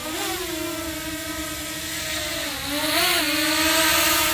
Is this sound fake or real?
real